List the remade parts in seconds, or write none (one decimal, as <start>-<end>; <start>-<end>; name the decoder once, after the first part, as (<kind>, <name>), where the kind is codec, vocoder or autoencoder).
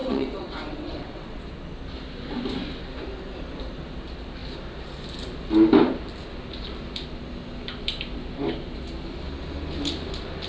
0.0-1.4 (vocoder, WaveNeXt)